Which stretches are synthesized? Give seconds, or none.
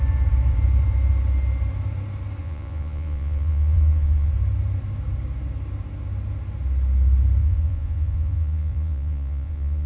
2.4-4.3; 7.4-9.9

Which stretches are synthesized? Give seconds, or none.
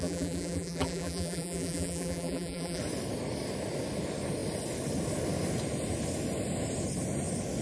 0.0-2.8